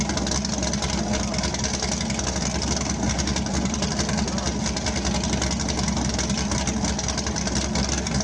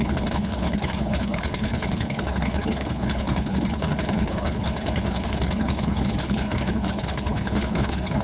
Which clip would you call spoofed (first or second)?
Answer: second